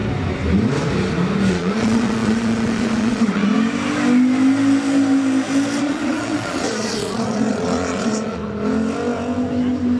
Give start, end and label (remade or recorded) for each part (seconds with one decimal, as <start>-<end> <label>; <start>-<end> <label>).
0.0-1.5 recorded; 1.5-3.5 remade; 3.5-5.8 recorded; 5.8-8.4 remade; 8.4-10.0 recorded